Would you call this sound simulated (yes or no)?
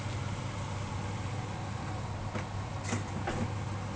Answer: no